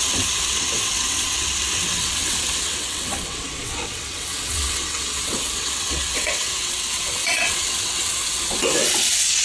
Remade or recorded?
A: remade